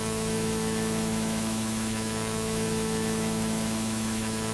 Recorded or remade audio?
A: remade